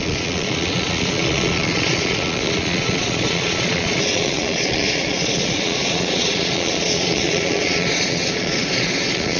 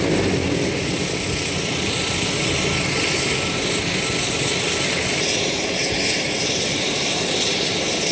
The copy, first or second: first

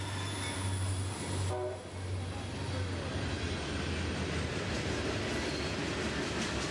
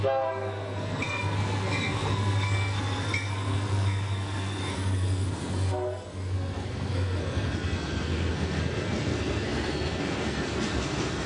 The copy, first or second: second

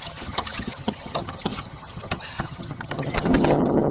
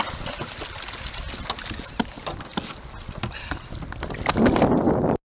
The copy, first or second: first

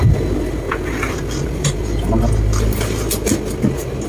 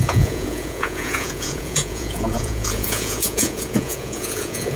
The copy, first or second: second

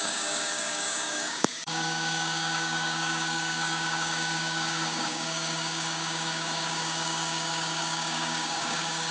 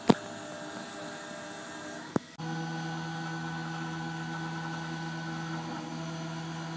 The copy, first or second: first